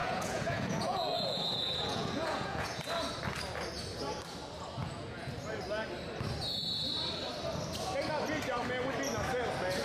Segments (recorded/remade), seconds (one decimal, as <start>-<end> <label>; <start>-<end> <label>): 0.0-2.8 remade; 2.8-4.8 recorded; 4.8-5.3 remade; 5.3-9.8 recorded